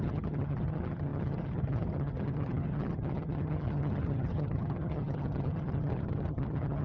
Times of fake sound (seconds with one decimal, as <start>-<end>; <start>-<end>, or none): 0.0-6.8